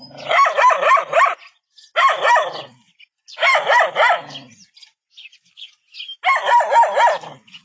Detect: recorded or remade recorded